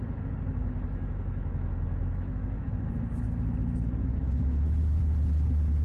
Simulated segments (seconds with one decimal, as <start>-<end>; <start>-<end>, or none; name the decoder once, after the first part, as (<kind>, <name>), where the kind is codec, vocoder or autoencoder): 0.6-2.9 (autoencoder, DAC-VAE); 4.0-5.0